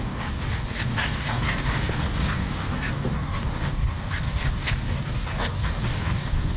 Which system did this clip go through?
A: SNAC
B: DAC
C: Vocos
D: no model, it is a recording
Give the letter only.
B